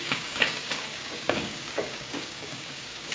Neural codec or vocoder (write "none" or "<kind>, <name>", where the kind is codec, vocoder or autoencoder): codec, DAC